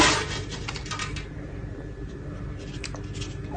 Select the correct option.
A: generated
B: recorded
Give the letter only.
B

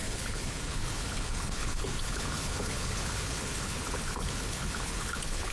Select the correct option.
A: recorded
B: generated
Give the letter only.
B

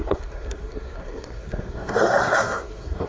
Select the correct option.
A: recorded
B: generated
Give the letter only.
B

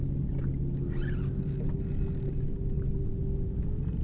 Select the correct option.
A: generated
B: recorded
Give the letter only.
B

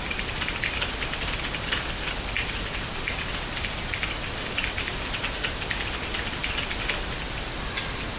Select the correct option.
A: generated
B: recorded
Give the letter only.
B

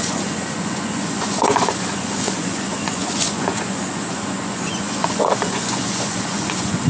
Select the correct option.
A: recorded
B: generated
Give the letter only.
B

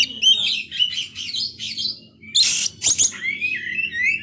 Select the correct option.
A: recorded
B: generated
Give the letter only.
A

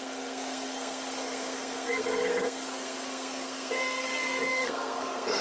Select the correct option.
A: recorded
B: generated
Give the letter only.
B